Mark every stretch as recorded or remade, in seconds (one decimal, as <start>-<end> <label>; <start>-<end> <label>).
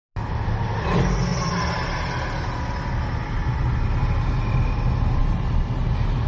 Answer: 0.0-6.3 recorded